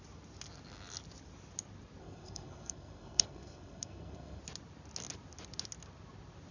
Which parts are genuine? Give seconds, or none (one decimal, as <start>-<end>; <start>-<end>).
0.0-2.0; 4.4-6.5